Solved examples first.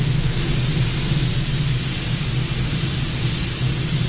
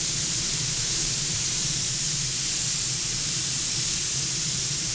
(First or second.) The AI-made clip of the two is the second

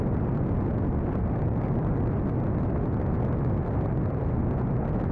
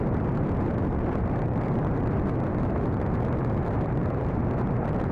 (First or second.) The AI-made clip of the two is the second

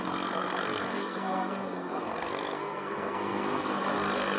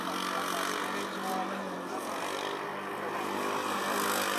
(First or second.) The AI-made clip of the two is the first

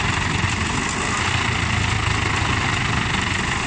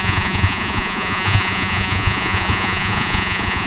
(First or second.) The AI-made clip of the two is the second